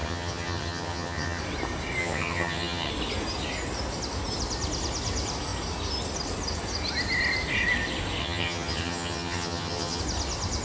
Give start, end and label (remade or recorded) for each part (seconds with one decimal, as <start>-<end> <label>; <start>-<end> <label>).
0.0-1.4 remade; 1.4-2.0 recorded; 2.0-2.9 remade; 2.9-8.2 recorded; 8.2-10.0 remade; 10.0-10.6 recorded